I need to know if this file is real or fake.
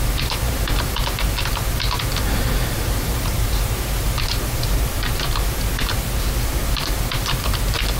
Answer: real